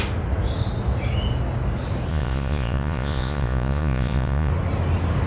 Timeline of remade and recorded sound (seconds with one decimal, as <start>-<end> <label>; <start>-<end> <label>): 0.0-2.1 recorded; 2.1-4.5 remade; 4.5-5.3 recorded

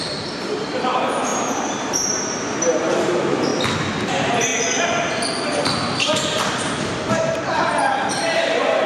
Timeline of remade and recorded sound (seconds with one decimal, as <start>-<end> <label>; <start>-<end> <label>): 0.0-3.5 remade; 3.5-4.1 recorded; 4.1-4.5 remade; 4.5-6.5 recorded; 6.5-8.9 remade